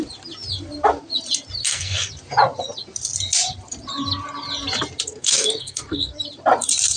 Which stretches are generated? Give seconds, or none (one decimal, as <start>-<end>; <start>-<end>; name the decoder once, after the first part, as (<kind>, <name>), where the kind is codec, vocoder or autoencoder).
1.6-2.1 (codec, SNAC); 5.1-6.2